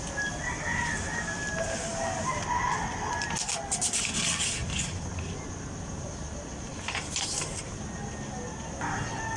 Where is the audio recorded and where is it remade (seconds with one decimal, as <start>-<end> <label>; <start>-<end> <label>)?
0.0-6.7 recorded; 6.7-7.6 remade; 7.6-9.4 recorded